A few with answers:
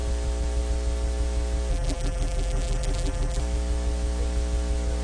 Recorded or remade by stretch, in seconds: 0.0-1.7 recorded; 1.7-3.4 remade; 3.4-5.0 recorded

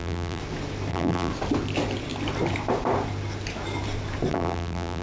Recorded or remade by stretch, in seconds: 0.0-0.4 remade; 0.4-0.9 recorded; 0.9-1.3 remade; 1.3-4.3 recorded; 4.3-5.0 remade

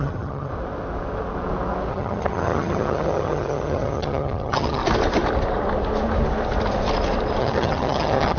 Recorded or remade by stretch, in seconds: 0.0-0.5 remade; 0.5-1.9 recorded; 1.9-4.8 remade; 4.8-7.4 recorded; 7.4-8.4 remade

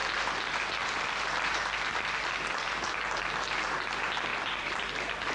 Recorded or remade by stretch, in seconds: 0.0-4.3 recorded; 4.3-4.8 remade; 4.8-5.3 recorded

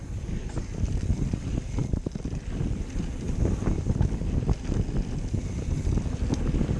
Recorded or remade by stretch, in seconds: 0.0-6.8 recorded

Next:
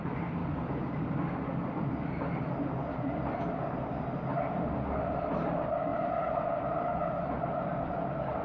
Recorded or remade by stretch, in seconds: 0.0-0.4 recorded; 0.4-1.9 remade; 1.9-8.4 recorded

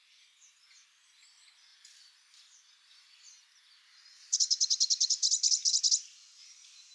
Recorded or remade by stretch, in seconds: 0.0-1.7 recorded; 1.7-5.8 remade; 5.8-6.9 recorded